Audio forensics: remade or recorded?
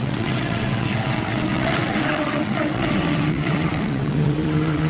remade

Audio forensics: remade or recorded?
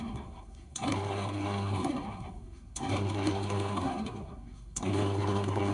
remade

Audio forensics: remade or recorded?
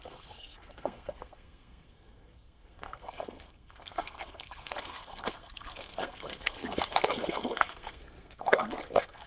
remade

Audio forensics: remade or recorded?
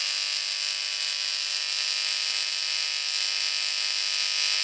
recorded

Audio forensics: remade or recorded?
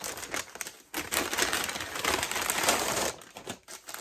recorded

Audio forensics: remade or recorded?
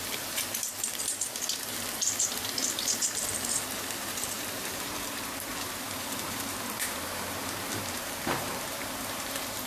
remade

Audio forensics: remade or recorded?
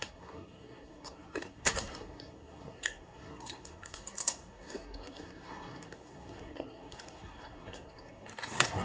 remade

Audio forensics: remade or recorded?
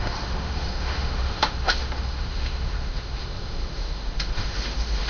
remade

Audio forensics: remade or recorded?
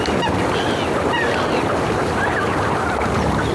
recorded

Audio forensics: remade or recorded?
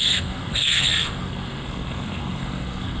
remade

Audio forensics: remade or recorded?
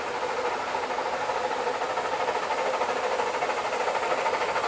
recorded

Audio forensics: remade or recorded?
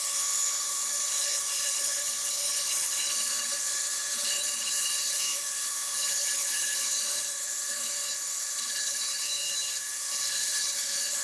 remade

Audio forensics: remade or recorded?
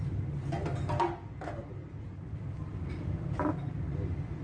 recorded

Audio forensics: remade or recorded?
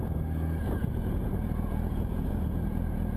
remade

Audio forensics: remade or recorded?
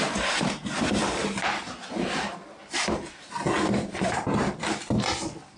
remade